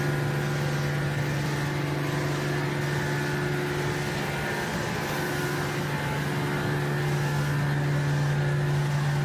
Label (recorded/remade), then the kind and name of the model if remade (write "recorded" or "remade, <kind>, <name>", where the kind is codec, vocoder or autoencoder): recorded